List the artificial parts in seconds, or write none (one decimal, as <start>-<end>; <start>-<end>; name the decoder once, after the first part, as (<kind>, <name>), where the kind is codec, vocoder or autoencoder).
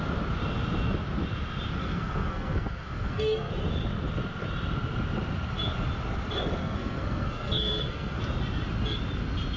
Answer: 1.8-3.5 (codec, SNAC); 6.6-8.2